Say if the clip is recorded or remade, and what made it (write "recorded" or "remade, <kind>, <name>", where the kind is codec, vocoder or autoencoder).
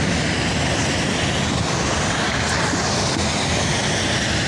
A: recorded